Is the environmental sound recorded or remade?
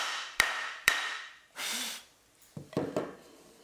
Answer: remade